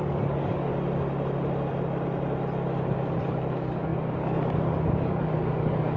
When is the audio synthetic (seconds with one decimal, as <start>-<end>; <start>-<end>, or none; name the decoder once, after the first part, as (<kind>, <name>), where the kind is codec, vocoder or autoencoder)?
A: 0.0-0.7 (codec, DAC); 3.2-6.0